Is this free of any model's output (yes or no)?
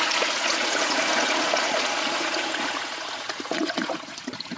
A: no